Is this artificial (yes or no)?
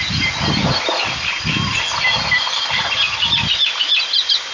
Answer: no